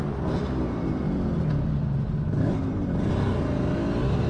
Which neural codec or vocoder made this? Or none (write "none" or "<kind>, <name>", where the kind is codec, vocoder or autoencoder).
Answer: none